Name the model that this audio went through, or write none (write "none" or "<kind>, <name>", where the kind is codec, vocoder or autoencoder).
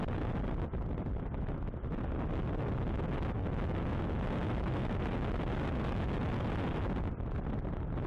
none